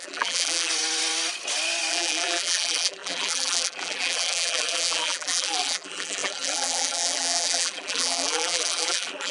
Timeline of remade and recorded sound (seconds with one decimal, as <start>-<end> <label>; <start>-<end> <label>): 0.0-0.7 remade; 0.7-1.9 recorded; 1.9-9.3 remade